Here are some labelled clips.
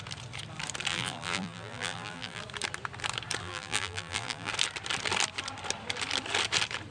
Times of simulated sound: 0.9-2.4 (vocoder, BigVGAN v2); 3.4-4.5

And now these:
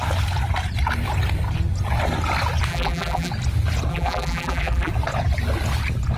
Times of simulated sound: 2.7-3.3 (vocoder, BigVGAN v2); 3.9-4.9

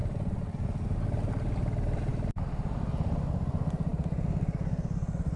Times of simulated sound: none

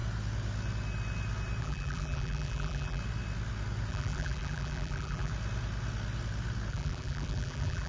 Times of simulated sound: 1.6-3.0 (vocoder, BigVGAN v2); 3.9-5.3; 6.7-7.9

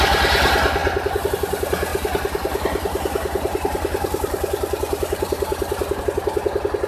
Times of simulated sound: 1.9-6.0 (vocoder, BigVGAN v2)